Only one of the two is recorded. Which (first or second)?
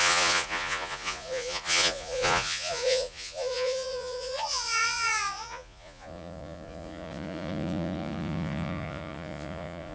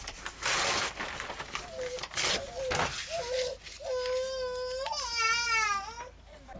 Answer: second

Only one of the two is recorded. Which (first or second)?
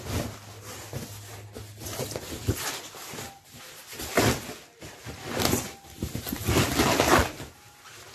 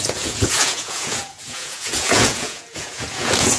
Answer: first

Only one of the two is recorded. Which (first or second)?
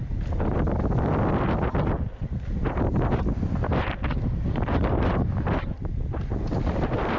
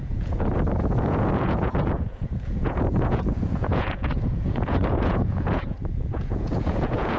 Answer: first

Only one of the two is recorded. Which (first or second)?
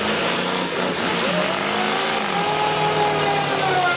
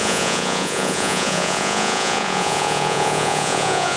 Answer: first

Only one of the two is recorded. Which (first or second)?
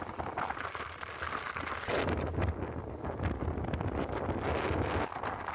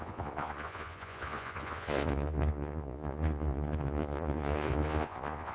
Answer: first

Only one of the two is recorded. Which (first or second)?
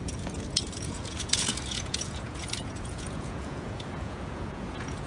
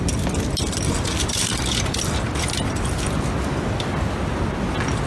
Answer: second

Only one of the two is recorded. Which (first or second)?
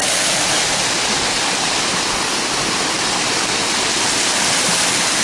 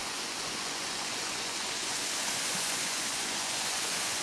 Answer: first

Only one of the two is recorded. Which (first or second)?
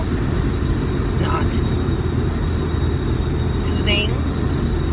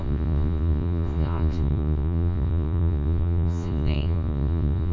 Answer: first